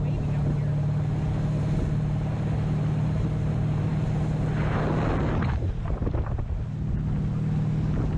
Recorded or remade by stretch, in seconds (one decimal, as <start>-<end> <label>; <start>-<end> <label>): 0.0-8.2 recorded